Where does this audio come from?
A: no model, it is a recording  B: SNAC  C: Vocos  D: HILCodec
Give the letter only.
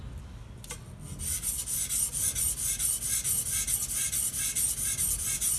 A